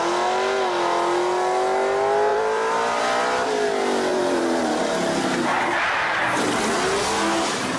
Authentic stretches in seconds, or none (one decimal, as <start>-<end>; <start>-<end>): 0.0-2.3; 3.0-4.1; 4.8-7.8